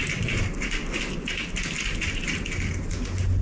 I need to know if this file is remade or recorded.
recorded